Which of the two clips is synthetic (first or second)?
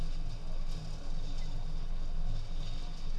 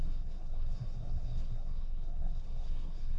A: second